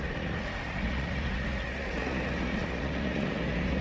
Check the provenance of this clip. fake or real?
fake